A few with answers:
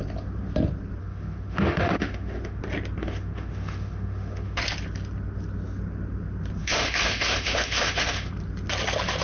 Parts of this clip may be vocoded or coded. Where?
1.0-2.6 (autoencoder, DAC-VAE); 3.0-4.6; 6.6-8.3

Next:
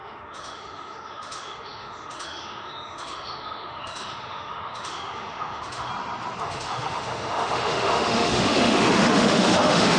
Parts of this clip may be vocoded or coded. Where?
0.0-5.9 (autoencoder, DAC-VAE); 6.4-10.0

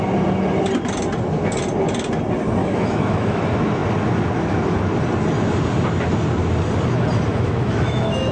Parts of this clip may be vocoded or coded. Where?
2.6-3.4 (autoencoder, DAC-VAE); 7.3-8.3

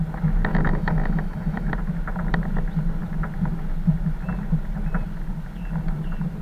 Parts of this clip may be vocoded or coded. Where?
0.5-1.7 (autoencoder, DAC-VAE)

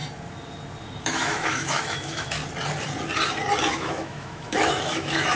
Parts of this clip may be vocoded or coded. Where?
1.0-2.4 (autoencoder, DAC-VAE); 3.7-5.4

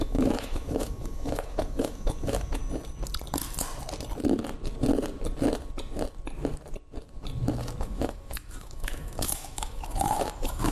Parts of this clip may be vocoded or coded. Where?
0.0-2.6 (autoencoder, DAC-VAE); 7.8-10.7

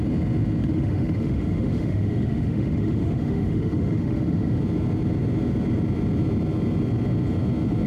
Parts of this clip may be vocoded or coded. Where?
0.6-4.6 (autoencoder, DAC-VAE)